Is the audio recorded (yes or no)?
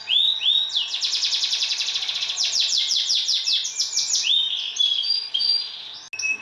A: yes